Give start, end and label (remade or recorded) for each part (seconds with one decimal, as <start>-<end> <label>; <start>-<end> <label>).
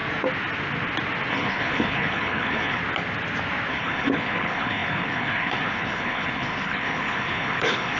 0.0-1.3 recorded; 1.3-2.8 remade; 2.8-3.7 recorded; 3.7-8.0 remade